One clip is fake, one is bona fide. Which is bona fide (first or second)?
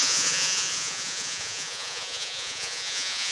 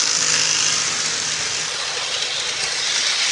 second